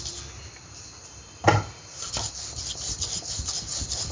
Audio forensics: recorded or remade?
recorded